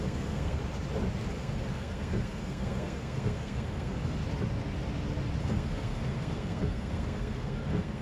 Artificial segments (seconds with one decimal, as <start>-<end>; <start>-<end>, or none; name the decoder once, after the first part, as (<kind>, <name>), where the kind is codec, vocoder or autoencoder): 0.0-0.6 (codec, SNAC); 1.3-4.2; 5.4-8.0